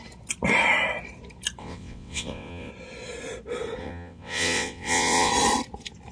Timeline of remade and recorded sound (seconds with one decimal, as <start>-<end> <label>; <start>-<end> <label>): 0.0-1.6 recorded; 1.6-2.7 remade; 2.7-3.8 recorded; 3.8-5.3 remade; 5.3-6.1 recorded